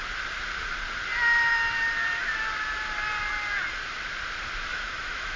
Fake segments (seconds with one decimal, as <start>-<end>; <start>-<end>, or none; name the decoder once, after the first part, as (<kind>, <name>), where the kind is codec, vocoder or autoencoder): 4.7-5.4 (autoencoder, DAC-VAE)